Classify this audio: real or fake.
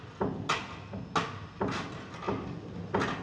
real